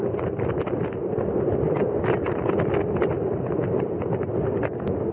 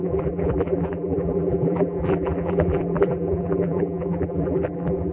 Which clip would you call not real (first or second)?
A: second